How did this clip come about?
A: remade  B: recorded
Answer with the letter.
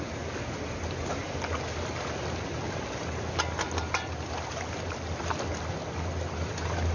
B